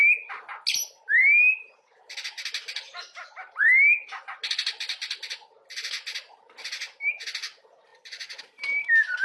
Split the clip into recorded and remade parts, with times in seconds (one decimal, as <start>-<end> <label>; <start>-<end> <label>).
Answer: 0.0-9.2 recorded